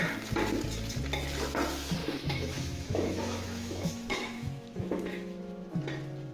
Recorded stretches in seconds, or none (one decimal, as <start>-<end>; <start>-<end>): 0.0-2.0; 5.8-6.3